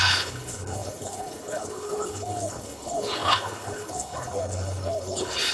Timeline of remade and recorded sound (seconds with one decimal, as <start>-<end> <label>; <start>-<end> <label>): 0.0-5.5 remade